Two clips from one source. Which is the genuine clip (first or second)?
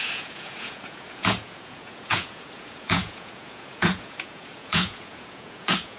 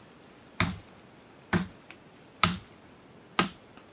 second